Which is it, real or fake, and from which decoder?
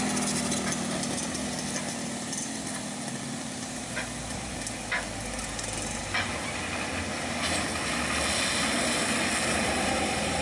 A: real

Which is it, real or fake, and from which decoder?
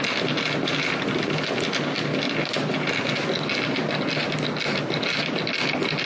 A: real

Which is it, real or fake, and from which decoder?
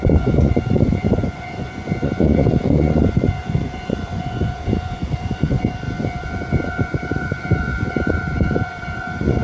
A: fake, vocoder, Vocos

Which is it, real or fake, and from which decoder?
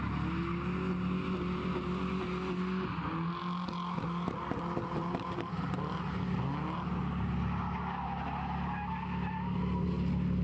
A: real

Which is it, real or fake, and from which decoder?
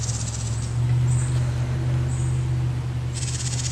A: real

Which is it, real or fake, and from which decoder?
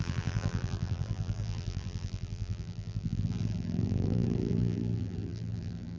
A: fake, vocoder, BigVGAN v2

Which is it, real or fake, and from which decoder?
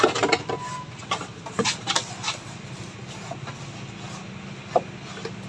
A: real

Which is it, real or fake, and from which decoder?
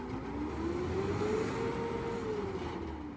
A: real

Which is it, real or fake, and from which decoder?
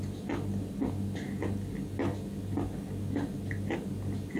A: real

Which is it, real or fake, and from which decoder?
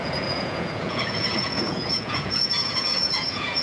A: fake, vocoder, Vocos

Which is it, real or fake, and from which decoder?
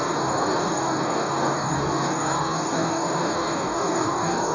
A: fake, codec, DAC